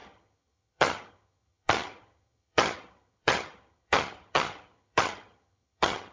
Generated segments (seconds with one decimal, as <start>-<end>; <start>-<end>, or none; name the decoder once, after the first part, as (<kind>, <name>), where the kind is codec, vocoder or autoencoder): 0.0-6.1 (vocoder, HiFi-GAN)